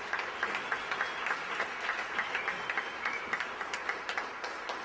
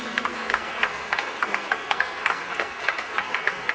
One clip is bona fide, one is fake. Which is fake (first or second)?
second